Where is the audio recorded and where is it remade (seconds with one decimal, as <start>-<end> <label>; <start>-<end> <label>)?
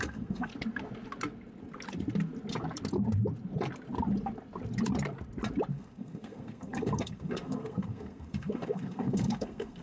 0.0-0.5 remade; 0.5-5.7 recorded; 5.7-9.8 remade